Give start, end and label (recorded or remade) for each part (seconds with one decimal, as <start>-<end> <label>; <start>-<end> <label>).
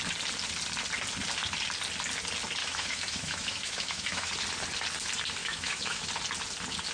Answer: 0.0-2.6 recorded; 2.6-4.3 remade; 4.3-5.4 recorded; 5.4-6.1 remade; 6.1-6.9 recorded